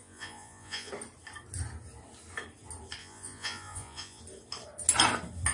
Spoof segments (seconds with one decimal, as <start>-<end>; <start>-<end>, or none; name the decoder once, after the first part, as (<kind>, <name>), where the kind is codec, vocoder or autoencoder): 0.0-0.9 (vocoder, Vocos); 3.0-4.2